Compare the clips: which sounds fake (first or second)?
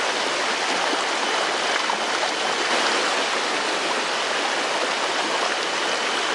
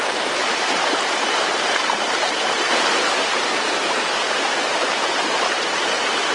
second